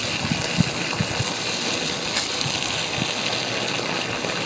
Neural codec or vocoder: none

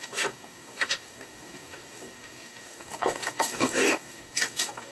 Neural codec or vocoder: codec, DAC